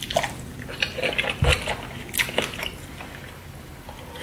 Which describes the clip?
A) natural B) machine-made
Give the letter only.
A